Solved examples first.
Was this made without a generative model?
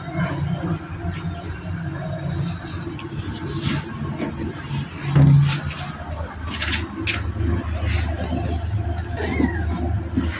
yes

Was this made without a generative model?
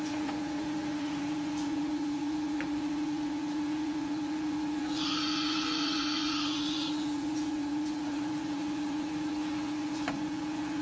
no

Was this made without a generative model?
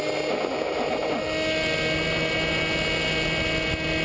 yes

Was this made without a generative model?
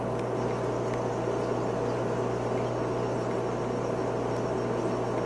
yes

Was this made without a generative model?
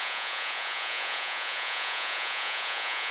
no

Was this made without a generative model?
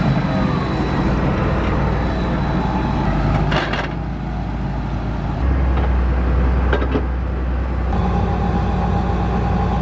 yes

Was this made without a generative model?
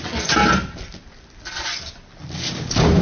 yes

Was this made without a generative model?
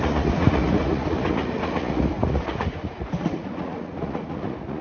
no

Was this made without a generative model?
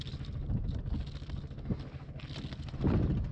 yes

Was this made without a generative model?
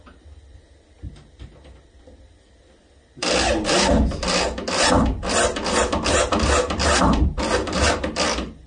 yes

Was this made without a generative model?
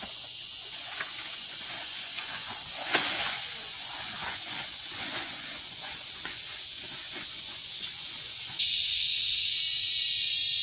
no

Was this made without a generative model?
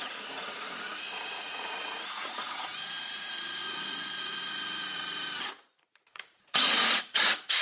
no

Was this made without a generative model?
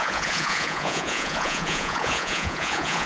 no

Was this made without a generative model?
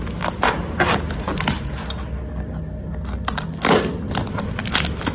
yes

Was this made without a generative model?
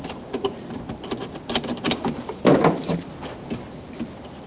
yes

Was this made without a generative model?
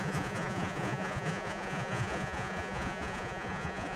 no